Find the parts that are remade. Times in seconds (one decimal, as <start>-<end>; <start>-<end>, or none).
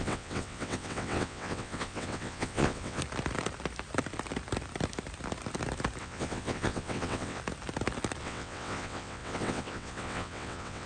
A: 0.0-3.0; 6.0-7.4; 8.2-10.9